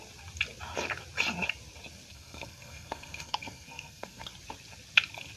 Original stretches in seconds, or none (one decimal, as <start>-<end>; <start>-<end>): 0.0-2.1; 4.3-5.4